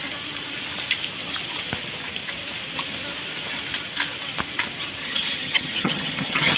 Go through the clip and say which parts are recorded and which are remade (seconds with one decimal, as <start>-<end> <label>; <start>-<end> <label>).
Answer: 0.0-5.0 recorded; 5.0-6.6 remade